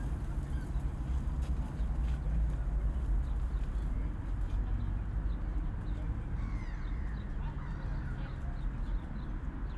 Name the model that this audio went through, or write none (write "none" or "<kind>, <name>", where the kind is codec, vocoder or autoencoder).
none